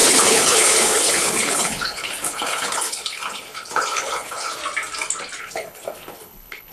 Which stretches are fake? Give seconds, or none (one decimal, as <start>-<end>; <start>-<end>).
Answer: 0.0-4.6; 5.4-6.7